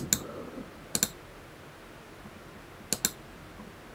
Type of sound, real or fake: real